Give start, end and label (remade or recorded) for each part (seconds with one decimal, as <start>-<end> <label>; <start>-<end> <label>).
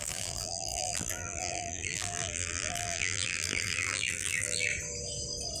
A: 0.0-4.7 remade; 4.7-5.6 recorded